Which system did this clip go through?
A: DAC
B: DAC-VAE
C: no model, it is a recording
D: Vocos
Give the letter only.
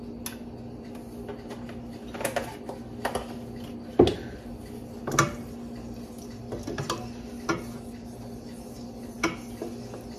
C